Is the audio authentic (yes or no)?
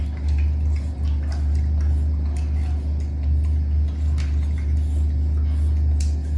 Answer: yes